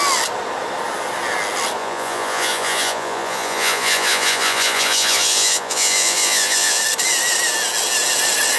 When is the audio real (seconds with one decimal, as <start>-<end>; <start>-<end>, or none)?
0.0-1.8; 6.8-8.6